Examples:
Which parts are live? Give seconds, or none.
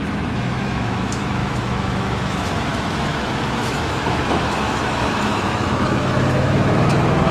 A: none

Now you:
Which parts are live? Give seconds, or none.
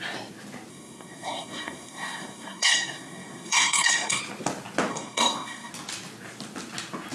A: 0.0-0.7; 4.2-4.9; 5.7-7.1